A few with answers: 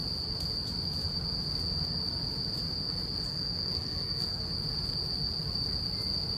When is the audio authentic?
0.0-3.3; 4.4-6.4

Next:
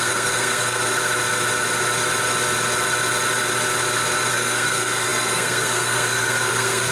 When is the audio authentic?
0.9-4.3

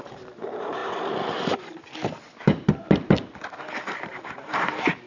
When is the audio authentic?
0.8-3.8

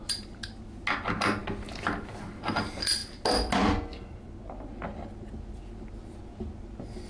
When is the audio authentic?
0.0-7.1

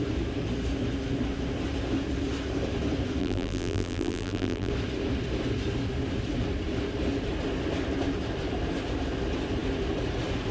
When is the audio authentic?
0.0-3.2; 4.7-10.5

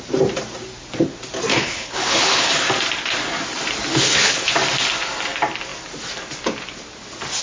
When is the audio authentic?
0.0-1.5; 2.5-3.9; 4.5-7.4